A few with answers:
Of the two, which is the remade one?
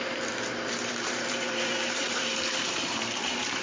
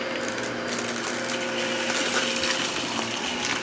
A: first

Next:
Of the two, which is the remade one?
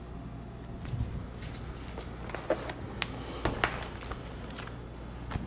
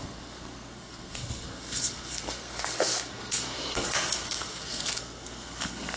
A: second